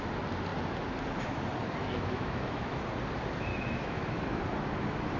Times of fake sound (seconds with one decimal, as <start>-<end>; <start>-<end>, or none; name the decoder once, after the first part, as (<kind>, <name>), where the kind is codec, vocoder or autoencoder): 1.8-2.8 (autoencoder, DAC-VAE); 3.5-4.4